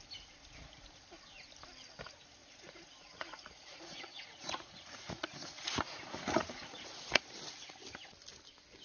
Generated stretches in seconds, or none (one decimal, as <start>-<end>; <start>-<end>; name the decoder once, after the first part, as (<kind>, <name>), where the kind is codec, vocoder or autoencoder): 2.4-7.2 (vocoder, Vocos)